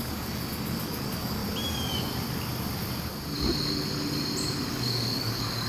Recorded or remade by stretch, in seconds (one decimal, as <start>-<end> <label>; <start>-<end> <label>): 0.0-1.4 remade; 1.4-4.7 recorded; 4.7-5.7 remade